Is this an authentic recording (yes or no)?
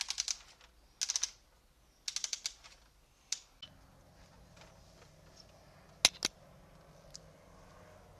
yes